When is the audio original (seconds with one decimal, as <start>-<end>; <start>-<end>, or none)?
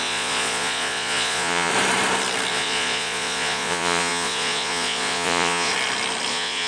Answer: 1.7-2.5; 5.7-6.3